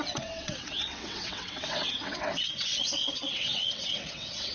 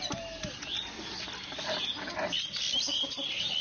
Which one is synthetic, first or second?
first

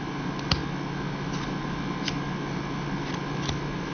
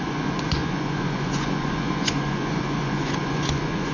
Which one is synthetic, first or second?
second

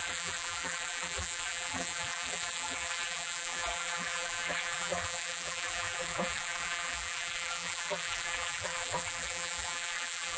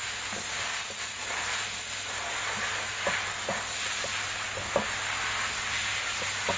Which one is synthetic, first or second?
first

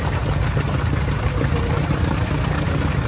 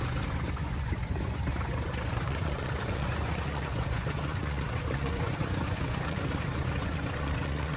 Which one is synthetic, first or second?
second